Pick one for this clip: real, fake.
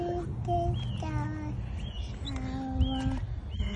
real